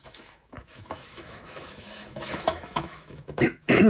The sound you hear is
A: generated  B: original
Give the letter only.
A